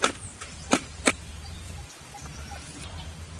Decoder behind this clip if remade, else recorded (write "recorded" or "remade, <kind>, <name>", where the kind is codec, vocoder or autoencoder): remade, vocoder, BigVGAN v2